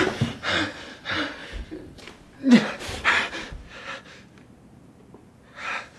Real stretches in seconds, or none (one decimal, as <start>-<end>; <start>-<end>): 0.0-1.4; 2.8-6.0